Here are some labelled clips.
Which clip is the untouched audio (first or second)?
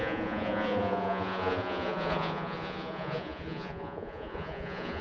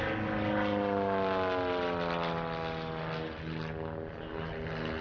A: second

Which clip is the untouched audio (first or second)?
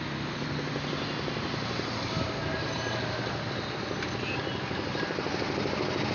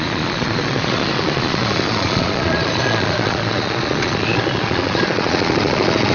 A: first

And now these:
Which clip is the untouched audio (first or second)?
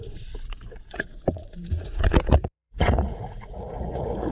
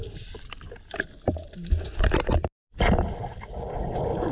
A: second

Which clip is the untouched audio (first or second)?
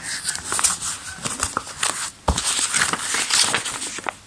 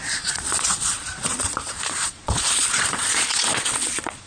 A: first